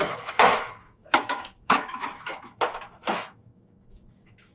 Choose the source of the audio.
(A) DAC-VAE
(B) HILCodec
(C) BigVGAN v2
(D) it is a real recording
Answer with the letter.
A